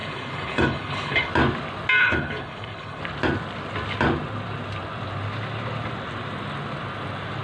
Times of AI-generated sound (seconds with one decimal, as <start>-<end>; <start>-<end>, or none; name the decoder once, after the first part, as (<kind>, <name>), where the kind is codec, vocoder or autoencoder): 0.0-1.3 (codec, HILCodec); 2.0-3.0